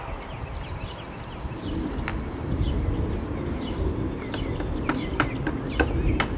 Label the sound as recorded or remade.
recorded